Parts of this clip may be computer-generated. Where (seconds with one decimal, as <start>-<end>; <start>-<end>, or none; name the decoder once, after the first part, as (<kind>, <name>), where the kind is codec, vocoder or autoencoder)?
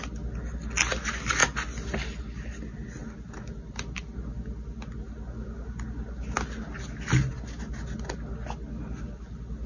none